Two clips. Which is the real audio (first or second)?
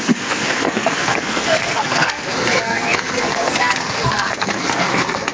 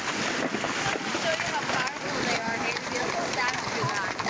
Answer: second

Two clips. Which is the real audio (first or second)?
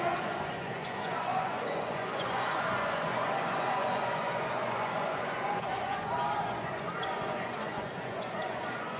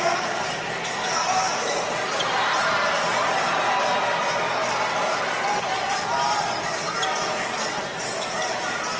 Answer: second